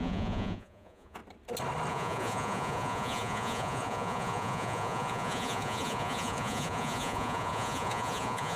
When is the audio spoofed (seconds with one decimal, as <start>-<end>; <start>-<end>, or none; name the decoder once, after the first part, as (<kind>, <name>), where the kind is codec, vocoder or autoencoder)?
0.0-1.2 (vocoder, Vocos); 1.9-8.6